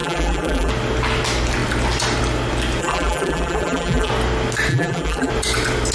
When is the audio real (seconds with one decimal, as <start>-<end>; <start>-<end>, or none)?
0.7-2.8; 4.1-4.7; 5.3-5.9